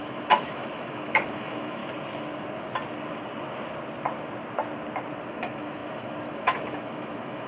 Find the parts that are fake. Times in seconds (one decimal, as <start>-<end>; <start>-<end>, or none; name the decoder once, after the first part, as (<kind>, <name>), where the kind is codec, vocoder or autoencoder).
0.0-1.8 (autoencoder, DAC-VAE); 5.3-7.5

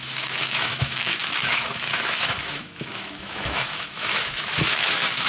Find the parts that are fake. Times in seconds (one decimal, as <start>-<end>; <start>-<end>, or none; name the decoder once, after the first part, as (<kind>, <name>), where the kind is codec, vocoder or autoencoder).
0.0-5.3 (autoencoder, DAC-VAE)

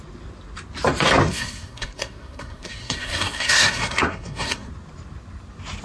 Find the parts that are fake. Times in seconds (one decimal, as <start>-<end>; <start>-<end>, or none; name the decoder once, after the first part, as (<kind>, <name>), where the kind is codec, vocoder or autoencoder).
1.2-4.7 (codec, SNAC)

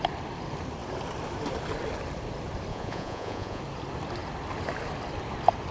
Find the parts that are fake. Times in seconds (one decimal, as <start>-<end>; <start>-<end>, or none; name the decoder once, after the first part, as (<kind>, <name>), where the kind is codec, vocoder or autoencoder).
2.7-3.6 (vocoder, Vocos)

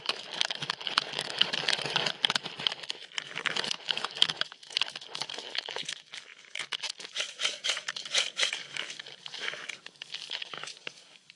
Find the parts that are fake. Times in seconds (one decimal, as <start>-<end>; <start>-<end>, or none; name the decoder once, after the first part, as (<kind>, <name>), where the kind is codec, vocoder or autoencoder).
0.0-2.4 (codec, DAC); 3.2-11.4

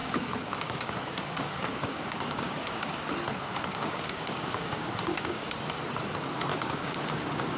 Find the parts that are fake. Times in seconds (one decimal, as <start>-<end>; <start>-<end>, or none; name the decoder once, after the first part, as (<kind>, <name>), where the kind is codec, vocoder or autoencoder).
0.0-2.8 (codec, DAC); 3.5-5.5; 6.5-7.6